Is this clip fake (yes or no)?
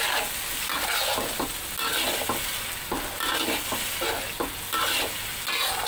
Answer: no